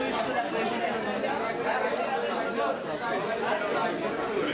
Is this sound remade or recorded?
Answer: recorded